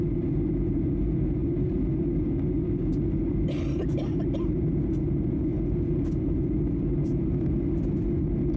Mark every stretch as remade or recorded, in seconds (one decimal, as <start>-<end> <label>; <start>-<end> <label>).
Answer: 0.0-8.6 recorded